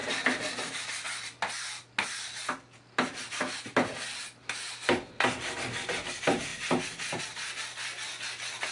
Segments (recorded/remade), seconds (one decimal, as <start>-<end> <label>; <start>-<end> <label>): 0.0-8.7 recorded